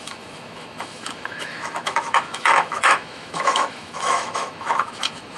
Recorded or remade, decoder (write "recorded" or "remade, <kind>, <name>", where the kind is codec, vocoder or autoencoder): remade, autoencoder, DAC-VAE